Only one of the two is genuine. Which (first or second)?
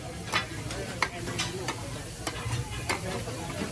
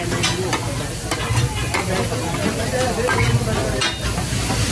second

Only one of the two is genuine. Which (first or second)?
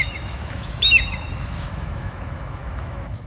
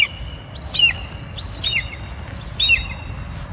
second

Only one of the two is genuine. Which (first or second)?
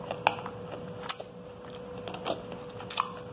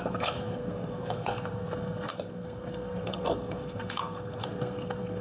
first